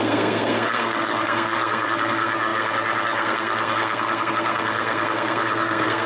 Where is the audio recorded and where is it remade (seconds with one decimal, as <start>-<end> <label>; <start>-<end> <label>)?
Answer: 0.0-6.1 remade